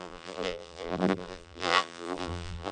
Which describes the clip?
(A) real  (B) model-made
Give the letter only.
B